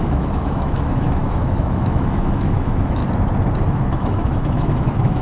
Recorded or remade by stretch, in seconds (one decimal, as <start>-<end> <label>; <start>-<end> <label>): 0.0-3.0 remade; 3.0-3.7 recorded; 3.7-5.2 remade